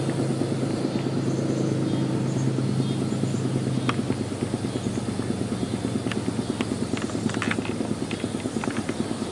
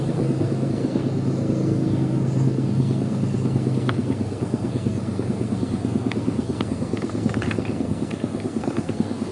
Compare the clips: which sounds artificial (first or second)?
second